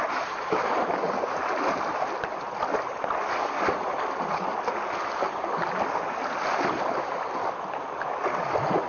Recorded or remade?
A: recorded